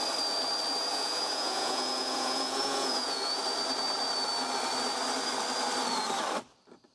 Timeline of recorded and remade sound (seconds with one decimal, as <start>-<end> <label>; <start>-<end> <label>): 0.0-0.9 recorded; 0.9-3.4 remade; 3.4-6.9 recorded